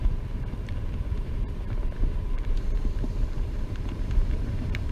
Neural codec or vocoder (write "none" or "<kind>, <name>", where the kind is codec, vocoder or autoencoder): vocoder, BigVGAN v2